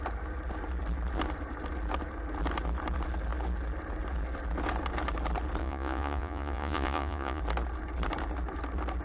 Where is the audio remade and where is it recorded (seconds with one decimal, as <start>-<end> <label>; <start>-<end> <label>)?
0.0-5.6 recorded; 5.6-7.4 remade; 7.4-9.0 recorded